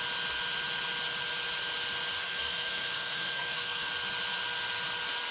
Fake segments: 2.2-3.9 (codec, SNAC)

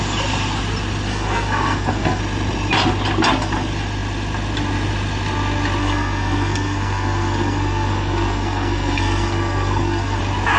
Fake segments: 1.1-2.2 (codec, SNAC); 5.8-10.2